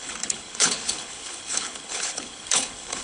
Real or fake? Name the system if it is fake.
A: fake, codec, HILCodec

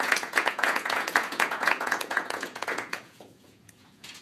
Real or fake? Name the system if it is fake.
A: fake, vocoder, Vocos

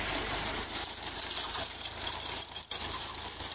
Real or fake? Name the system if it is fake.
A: fake, vocoder, BigVGAN v2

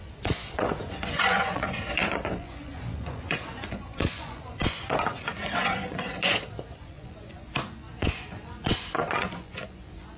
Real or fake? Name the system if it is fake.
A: fake, vocoder, Vocos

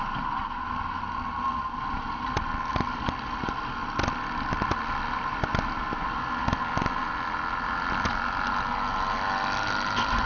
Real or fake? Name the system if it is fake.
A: real